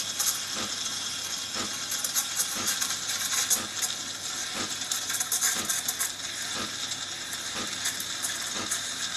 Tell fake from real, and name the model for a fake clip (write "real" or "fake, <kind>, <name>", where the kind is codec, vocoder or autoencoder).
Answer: real